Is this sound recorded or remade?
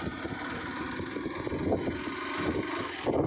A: recorded